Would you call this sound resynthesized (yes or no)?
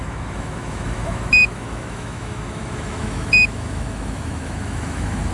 yes